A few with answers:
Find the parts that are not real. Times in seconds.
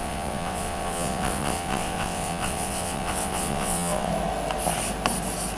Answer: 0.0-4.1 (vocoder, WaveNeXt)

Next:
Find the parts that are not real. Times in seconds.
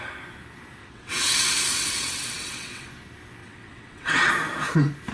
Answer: 0.8-2.9 (vocoder, WaveNeXt); 3.4-4.3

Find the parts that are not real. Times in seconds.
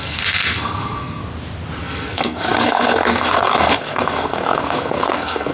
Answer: 0.0-1.2 (codec, SNAC); 1.8-5.5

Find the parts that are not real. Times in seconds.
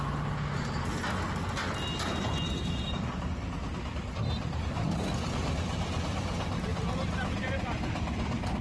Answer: none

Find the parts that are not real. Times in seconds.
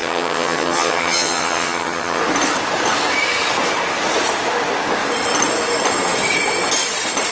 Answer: 0.0-2.2 (vocoder, HiFi-GAN)